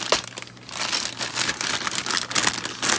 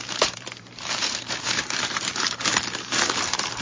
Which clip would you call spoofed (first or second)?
second